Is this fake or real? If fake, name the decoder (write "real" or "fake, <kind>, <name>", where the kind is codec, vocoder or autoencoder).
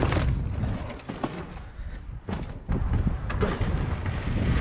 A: real